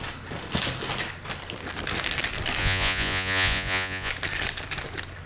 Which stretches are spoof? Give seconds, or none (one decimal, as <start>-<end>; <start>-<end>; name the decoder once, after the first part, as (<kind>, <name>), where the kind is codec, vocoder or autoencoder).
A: 2.6-4.1 (vocoder, Vocos)